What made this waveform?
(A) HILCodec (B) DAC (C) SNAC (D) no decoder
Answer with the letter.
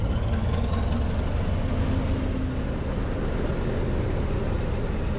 D